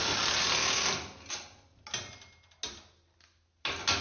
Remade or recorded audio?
recorded